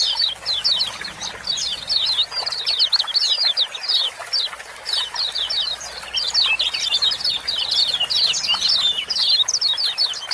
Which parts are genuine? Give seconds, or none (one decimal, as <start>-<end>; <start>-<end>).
0.0-10.3